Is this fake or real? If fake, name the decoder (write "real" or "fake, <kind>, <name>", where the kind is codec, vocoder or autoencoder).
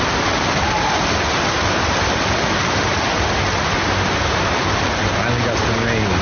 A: real